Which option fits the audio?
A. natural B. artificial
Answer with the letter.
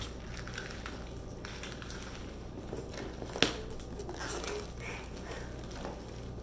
A